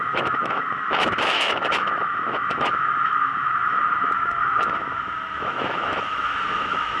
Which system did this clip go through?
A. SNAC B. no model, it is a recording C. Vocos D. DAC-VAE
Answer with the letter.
D